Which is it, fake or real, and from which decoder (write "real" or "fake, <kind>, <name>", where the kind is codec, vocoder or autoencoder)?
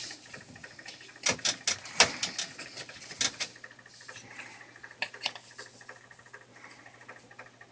real